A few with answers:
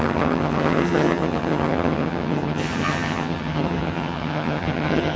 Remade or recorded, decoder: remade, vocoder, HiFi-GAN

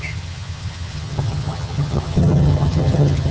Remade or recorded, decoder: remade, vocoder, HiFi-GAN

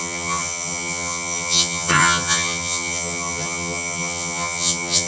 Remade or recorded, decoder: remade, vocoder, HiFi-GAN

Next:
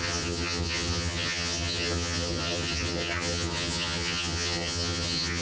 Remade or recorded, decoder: remade, vocoder, HiFi-GAN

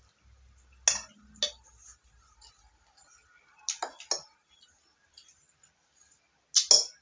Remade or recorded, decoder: recorded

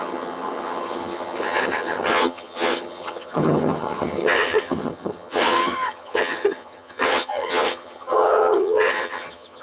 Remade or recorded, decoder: remade, vocoder, HiFi-GAN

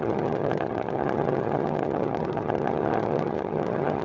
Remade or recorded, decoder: remade, vocoder, HiFi-GAN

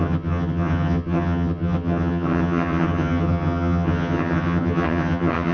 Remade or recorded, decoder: remade, vocoder, HiFi-GAN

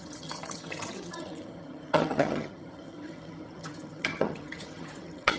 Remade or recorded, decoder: remade, vocoder, HiFi-GAN